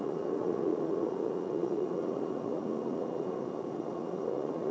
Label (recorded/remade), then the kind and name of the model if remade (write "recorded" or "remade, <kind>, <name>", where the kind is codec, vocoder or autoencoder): remade, vocoder, Vocos